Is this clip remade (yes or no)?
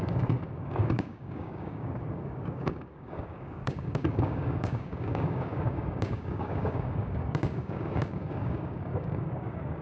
yes